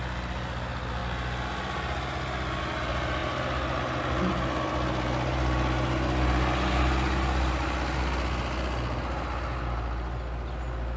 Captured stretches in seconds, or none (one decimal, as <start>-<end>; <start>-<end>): 0.0-11.0

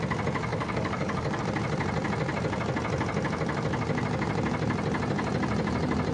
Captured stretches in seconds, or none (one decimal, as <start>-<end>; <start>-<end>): 0.0-0.5; 1.4-6.1